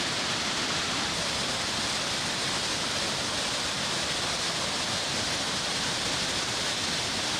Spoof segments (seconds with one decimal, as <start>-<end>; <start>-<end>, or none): 0.0-7.4